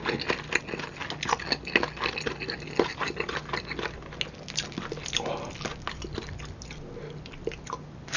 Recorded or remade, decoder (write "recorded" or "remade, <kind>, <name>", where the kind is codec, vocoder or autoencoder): recorded